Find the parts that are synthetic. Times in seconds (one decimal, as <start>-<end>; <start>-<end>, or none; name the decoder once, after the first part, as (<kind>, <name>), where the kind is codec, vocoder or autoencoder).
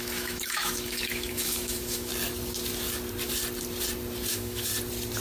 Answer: 0.0-2.1 (autoencoder, DAC-VAE); 4.3-4.7